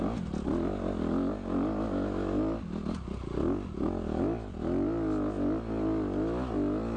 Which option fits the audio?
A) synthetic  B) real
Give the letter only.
B